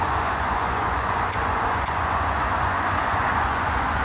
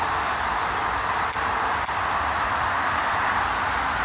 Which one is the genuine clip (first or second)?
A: second